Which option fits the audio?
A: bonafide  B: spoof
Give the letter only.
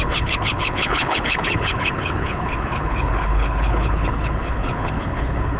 B